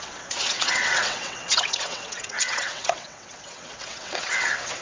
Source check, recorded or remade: remade